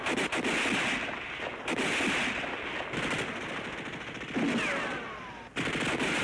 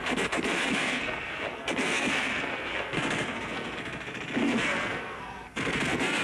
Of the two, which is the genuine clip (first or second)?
first